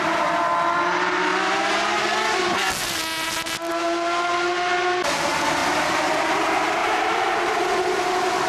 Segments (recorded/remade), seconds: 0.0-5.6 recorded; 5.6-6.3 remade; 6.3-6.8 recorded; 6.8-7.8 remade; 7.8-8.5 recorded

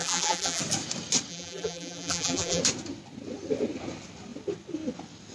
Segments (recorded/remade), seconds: 0.0-0.6 remade; 0.6-1.3 recorded; 1.3-2.6 remade; 2.6-5.3 recorded

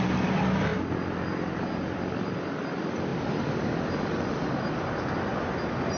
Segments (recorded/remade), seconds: 0.0-6.0 recorded

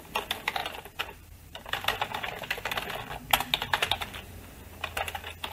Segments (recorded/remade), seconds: 0.0-0.6 recorded; 0.6-1.7 remade; 1.7-5.5 recorded

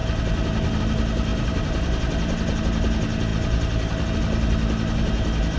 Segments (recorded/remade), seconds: 0.0-1.3 recorded; 1.3-2.6 remade; 2.6-5.6 recorded

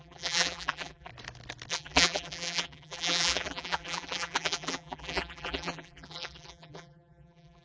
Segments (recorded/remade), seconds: 0.0-1.1 remade; 1.1-1.7 recorded; 1.7-7.6 remade

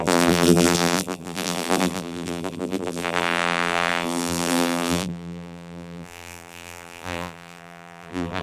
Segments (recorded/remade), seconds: 0.0-8.4 remade

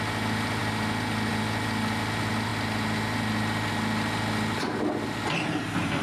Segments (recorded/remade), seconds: 0.0-6.0 recorded